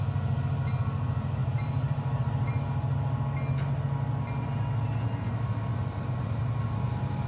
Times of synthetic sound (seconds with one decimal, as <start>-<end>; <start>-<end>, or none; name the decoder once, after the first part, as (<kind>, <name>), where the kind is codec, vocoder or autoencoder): 1.4-2.6 (vocoder, BigVGAN v2)